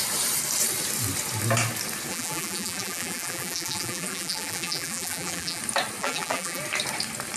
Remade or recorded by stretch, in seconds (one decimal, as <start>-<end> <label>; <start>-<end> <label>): 0.0-2.1 recorded; 2.1-5.6 remade; 5.6-6.0 recorded; 6.0-6.6 remade; 6.6-7.4 recorded